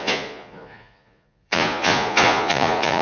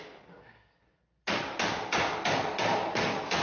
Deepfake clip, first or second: first